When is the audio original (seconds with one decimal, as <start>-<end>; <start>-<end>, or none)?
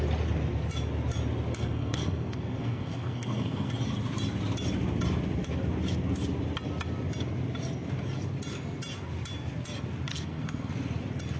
0.0-1.5; 3.7-10.1; 10.7-11.4